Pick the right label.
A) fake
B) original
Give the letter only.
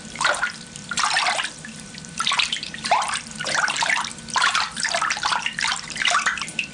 A